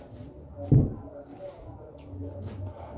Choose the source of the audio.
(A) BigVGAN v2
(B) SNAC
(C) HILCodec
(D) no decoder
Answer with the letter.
D